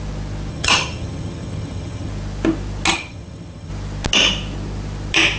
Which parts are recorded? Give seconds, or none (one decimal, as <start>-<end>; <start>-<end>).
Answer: 0.0-0.5; 2.1-2.9; 3.7-5.4